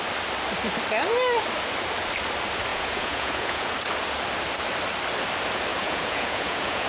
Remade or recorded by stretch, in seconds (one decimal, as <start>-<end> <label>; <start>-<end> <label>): 0.0-2.7 recorded; 2.7-3.7 remade; 3.7-5.7 recorded; 5.7-6.9 remade